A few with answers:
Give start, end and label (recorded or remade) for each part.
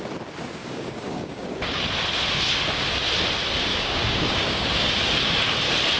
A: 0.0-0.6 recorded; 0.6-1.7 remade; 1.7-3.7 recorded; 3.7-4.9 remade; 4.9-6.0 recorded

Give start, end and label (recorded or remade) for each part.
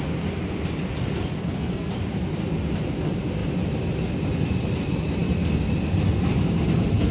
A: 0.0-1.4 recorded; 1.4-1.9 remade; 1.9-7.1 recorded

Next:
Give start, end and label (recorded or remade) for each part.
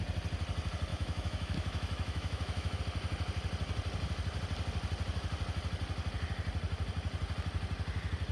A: 0.0-0.9 recorded; 0.9-2.8 remade; 2.8-8.3 recorded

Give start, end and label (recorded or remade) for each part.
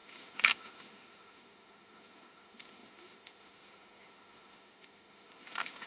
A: 0.0-5.9 remade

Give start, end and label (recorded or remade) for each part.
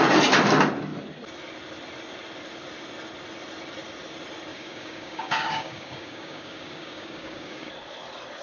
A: 0.0-4.5 recorded; 4.5-7.7 remade; 7.7-8.4 recorded